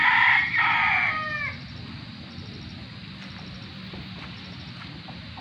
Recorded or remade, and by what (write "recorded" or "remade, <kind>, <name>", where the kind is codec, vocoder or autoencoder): recorded